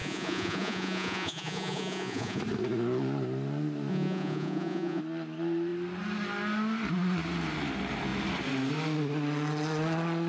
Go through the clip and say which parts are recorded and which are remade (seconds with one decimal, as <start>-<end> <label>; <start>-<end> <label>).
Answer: 0.0-2.4 remade; 2.4-3.9 recorded; 3.9-5.0 remade; 5.0-10.3 recorded